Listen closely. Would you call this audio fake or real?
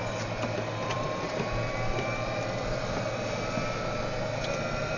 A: fake